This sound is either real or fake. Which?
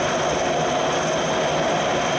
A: real